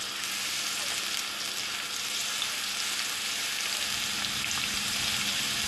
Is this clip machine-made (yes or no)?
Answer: no